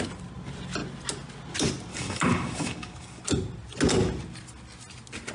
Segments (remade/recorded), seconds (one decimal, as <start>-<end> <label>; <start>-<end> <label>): 0.0-1.9 recorded; 1.9-3.2 remade; 3.2-5.3 recorded